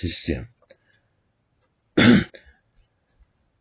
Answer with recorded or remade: recorded